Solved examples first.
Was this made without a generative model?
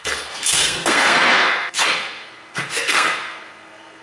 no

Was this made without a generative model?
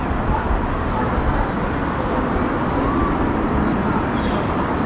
yes